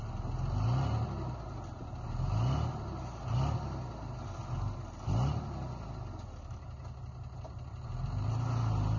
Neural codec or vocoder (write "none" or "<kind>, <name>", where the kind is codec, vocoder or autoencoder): none